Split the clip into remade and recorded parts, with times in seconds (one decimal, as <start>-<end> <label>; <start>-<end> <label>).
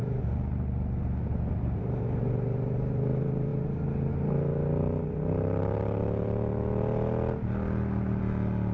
0.0-8.7 recorded